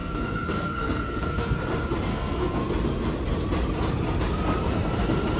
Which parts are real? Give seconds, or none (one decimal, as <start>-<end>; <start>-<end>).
1.6-2.1; 2.6-5.4